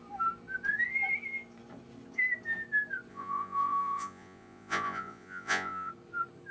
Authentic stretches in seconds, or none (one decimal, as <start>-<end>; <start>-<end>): 0.0-3.1; 5.9-6.5